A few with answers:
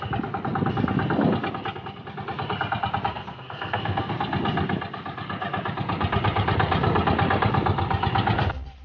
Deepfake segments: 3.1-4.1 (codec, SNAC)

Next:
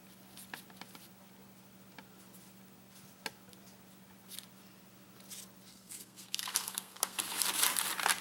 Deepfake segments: 5.7-7.2 (codec, SNAC)

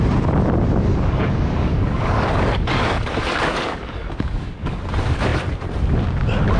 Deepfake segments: 0.8-4.8 (codec, DAC)

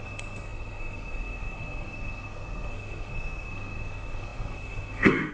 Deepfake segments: 0.0-5.3 (codec, SNAC)

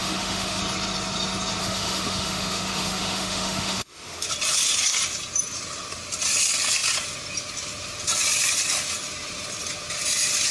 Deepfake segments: 0.0-0.6 (autoencoder, DAC-VAE); 1.6-4.3